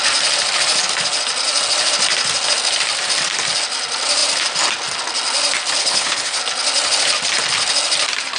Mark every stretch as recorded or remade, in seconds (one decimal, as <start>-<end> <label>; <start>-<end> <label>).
0.0-5.8 recorded; 5.8-6.4 remade; 6.4-8.4 recorded